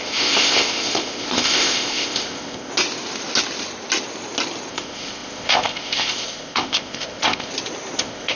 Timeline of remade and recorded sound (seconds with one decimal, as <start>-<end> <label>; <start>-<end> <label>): 0.0-2.7 remade; 2.7-4.7 recorded; 4.7-7.5 remade; 7.5-8.0 recorded; 8.0-8.4 remade